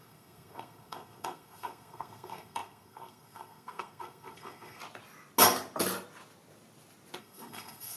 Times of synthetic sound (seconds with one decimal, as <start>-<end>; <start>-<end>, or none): 0.0-4.8; 7.2-8.0